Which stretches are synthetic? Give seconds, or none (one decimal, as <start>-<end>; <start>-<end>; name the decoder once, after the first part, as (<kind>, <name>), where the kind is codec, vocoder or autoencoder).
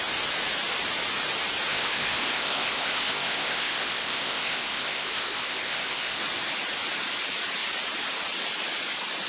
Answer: 1.7-6.2 (codec, ZipCodec)